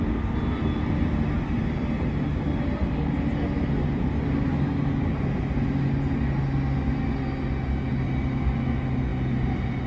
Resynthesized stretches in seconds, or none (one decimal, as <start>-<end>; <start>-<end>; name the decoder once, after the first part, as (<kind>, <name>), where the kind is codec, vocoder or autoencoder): none